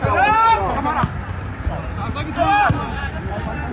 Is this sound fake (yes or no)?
no